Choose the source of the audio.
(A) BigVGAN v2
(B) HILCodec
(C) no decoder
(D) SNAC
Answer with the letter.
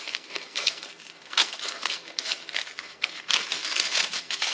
D